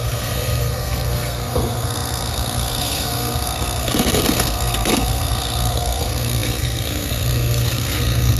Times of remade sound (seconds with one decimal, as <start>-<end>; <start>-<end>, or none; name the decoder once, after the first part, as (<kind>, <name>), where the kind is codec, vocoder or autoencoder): 0.0-8.4 (codec, SNAC)